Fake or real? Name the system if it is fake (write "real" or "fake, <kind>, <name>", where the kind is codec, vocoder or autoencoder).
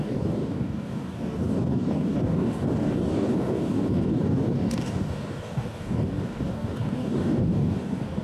fake, codec, DAC